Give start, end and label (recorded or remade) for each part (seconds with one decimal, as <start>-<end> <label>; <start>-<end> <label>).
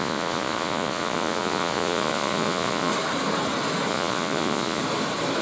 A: 0.0-2.9 remade; 2.9-3.9 recorded; 3.9-4.8 remade; 4.8-5.4 recorded